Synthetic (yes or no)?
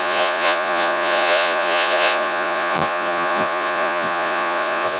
yes